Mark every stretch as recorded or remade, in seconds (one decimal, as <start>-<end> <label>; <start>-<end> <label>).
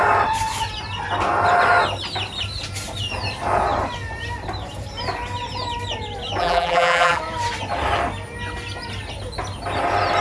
0.0-6.4 recorded; 6.4-7.2 remade; 7.2-10.2 recorded